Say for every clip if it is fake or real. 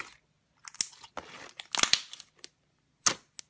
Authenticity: real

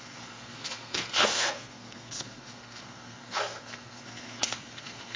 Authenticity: fake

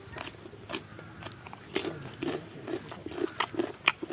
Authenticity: real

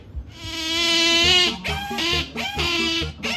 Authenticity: real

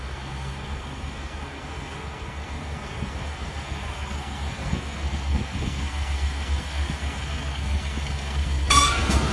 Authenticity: fake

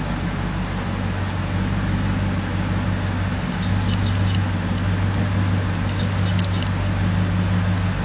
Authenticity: real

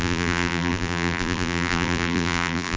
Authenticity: fake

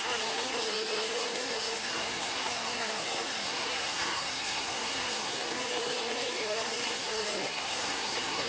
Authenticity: fake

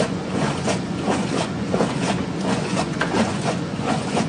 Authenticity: fake